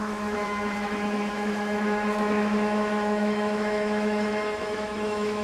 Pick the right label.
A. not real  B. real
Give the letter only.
A